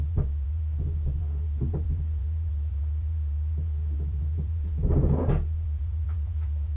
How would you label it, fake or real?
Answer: fake